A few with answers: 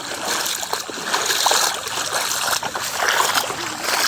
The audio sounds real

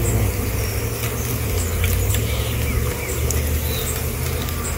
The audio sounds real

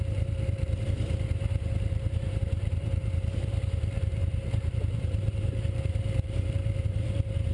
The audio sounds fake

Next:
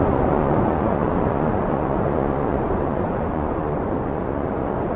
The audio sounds fake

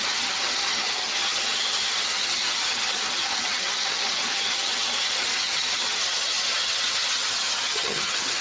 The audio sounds fake